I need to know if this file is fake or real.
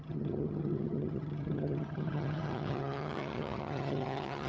fake